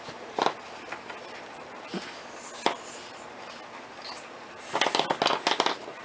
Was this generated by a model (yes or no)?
no